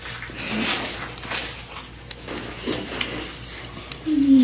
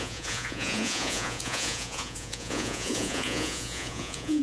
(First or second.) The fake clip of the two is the second